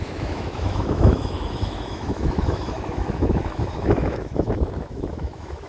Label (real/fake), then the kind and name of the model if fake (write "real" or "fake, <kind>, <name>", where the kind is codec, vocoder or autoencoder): fake, autoencoder, DAC-VAE